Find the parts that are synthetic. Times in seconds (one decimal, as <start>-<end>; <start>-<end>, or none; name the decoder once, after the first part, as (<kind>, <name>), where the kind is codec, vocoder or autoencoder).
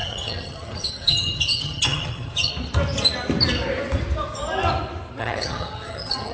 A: 0.0-2.5 (vocoder, HiFi-GAN); 5.2-6.3